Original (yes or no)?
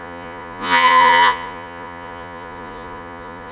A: no